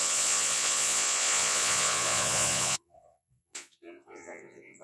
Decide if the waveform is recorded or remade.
remade